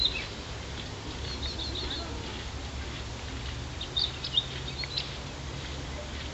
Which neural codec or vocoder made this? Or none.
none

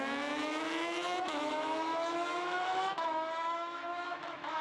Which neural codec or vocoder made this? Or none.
autoencoder, DAC-VAE